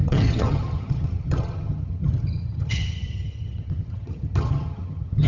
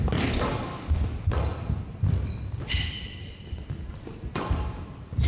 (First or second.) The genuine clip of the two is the second